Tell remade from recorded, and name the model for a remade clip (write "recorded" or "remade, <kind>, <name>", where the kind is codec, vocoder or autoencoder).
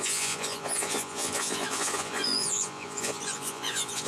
remade, vocoder, Vocos